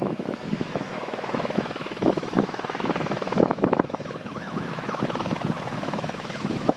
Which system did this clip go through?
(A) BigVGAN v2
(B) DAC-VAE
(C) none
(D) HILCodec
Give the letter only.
B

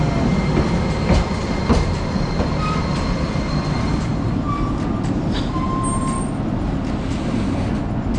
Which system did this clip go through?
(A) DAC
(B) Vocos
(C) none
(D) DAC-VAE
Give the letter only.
C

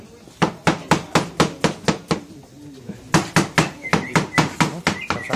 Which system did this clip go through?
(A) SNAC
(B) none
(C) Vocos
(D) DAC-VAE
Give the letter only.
B